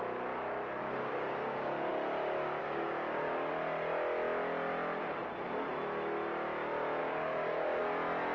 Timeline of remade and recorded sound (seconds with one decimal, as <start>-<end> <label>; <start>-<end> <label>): 0.0-0.8 recorded; 0.8-1.9 remade; 1.9-2.6 recorded; 2.6-3.5 remade; 3.5-7.0 recorded; 7.0-7.8 remade; 7.8-8.3 recorded